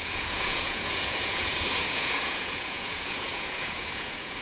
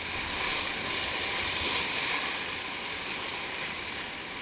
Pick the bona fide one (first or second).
second